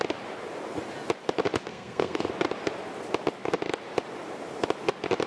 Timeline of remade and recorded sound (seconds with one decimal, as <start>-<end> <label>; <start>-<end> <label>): 0.0-1.7 recorded; 1.7-2.3 remade; 2.3-5.3 recorded